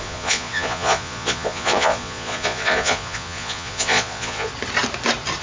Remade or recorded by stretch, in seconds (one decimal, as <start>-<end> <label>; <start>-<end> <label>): 0.0-4.5 remade; 4.5-5.4 recorded